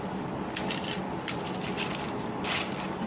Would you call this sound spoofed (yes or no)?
no